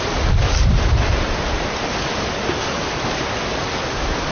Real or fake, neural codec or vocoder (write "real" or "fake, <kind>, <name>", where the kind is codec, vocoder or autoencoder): real